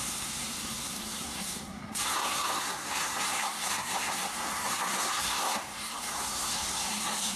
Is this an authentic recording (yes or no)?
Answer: no